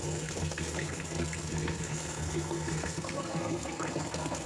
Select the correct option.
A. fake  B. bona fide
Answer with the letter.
A